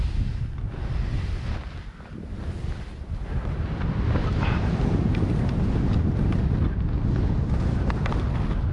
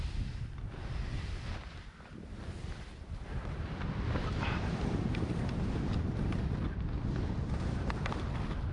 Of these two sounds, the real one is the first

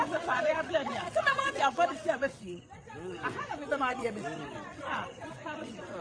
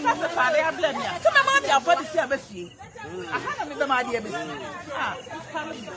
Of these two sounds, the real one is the second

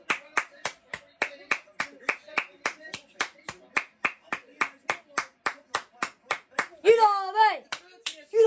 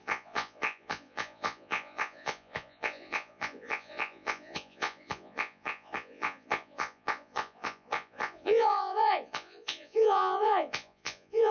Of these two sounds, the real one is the first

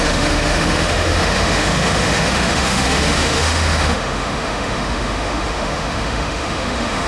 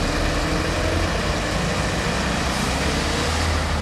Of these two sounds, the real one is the second